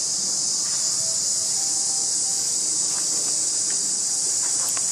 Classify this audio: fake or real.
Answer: real